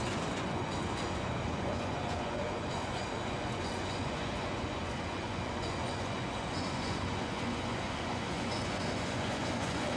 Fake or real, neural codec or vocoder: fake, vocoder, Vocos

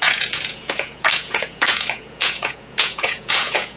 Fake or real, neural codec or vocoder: fake, vocoder, Vocos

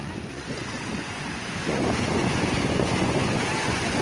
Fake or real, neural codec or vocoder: fake, vocoder, Vocos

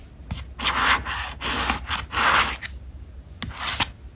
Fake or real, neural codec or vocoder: real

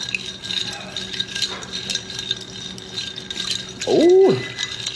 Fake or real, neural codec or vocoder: real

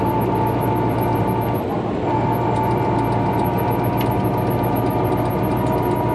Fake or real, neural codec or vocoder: real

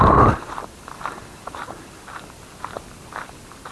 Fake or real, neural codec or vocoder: real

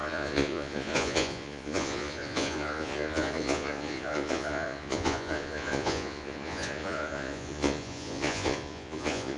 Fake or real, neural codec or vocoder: fake, vocoder, Vocos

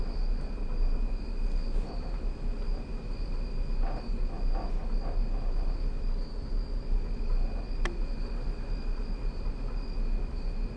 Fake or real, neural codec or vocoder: real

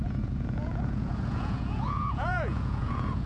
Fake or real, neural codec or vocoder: fake, vocoder, Vocos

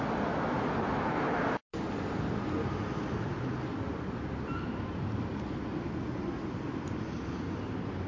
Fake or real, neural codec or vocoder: real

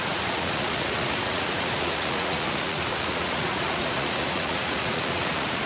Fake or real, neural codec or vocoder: fake, vocoder, Vocos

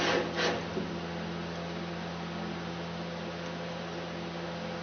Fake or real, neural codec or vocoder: real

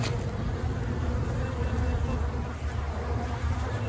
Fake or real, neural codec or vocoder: real